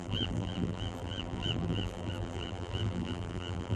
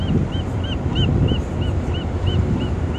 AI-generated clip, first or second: first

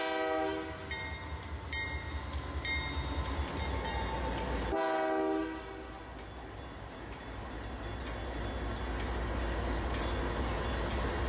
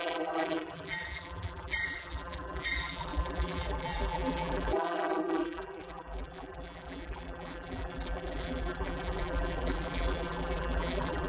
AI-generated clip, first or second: second